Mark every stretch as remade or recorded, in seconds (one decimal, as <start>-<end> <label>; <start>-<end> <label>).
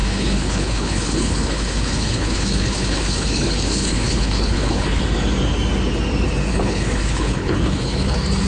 0.0-5.0 remade; 5.0-6.5 recorded; 6.5-8.1 remade; 8.1-8.5 recorded